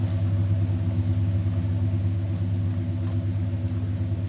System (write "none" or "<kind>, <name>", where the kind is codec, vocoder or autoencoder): none